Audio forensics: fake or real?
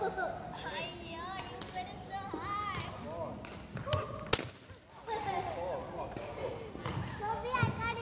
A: real